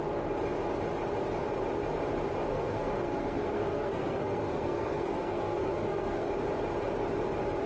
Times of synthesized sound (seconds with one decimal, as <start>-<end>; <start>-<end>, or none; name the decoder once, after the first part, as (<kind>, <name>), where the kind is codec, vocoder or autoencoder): 2.5-6.3 (codec, SNAC)